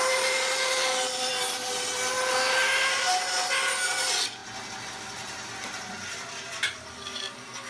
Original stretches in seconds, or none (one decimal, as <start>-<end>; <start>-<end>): 0.0-7.7